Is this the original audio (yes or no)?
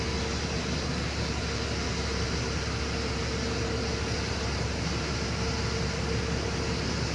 yes